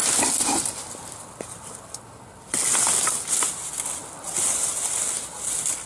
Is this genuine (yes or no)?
yes